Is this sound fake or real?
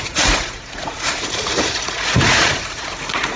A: fake